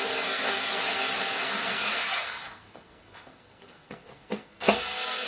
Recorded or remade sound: remade